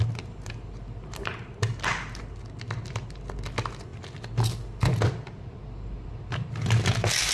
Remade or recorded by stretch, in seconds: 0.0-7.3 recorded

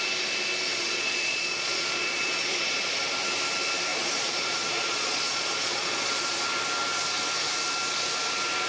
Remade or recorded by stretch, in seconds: 0.0-0.7 recorded; 0.7-2.9 remade; 2.9-3.9 recorded; 3.9-6.4 remade; 6.4-8.7 recorded

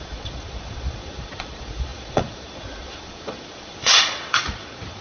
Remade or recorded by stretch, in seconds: 0.0-5.0 remade

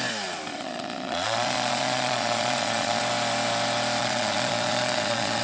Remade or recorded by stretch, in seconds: 0.0-0.5 recorded; 0.5-3.0 remade; 3.0-4.0 recorded; 4.0-5.4 remade

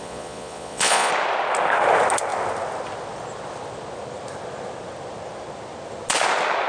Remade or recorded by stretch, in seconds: 0.0-1.1 remade; 1.1-6.7 recorded

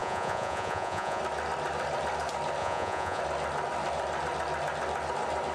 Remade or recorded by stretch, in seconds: 0.0-1.2 remade; 1.2-2.6 recorded; 2.6-3.2 remade; 3.2-5.5 recorded